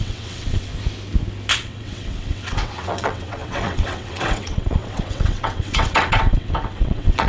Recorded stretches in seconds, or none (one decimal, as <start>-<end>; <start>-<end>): 0.7-1.5